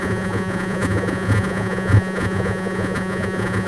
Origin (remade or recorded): remade